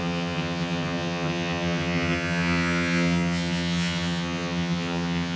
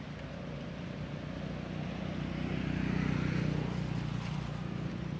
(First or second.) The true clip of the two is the second